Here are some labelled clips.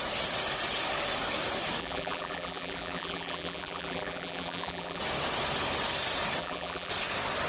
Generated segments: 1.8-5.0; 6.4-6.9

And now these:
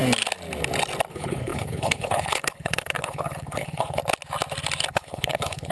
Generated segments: 1.1-4.0; 4.9-5.7

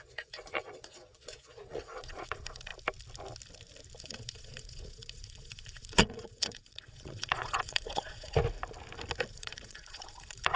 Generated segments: 0.0-2.7; 4.0-8.4; 9.3-10.6

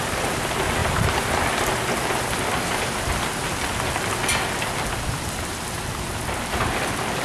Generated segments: none

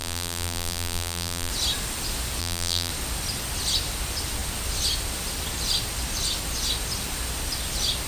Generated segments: 0.0-1.5; 2.4-2.9

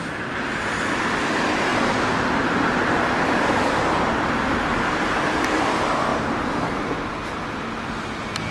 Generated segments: 6.1-7.1